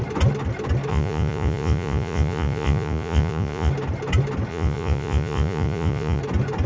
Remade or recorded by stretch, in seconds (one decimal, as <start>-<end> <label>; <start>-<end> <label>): 0.0-0.9 recorded; 0.9-3.7 remade; 3.7-4.5 recorded; 4.5-6.2 remade; 6.2-6.7 recorded

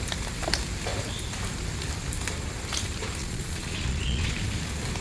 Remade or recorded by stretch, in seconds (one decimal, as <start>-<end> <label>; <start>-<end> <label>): 0.0-3.2 recorded; 3.2-4.4 remade; 4.4-5.0 recorded

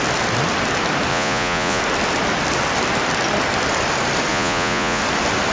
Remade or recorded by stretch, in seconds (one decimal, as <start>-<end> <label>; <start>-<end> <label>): 0.0-1.1 recorded; 1.1-1.8 remade; 1.8-4.3 recorded; 4.3-5.0 remade; 5.0-5.5 recorded

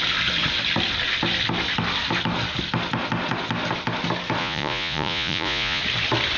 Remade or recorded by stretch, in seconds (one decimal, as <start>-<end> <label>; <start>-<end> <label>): 0.0-4.4 recorded; 4.4-5.8 remade; 5.8-6.4 recorded

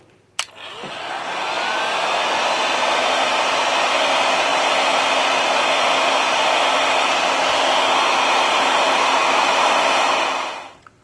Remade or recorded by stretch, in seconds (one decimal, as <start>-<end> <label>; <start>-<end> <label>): 0.0-11.0 recorded

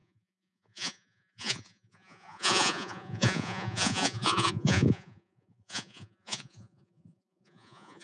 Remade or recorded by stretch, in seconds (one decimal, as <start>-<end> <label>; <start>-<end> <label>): 0.0-8.0 remade